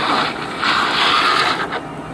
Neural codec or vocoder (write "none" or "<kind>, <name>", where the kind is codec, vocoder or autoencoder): none